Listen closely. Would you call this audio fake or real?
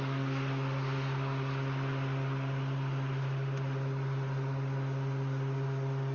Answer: real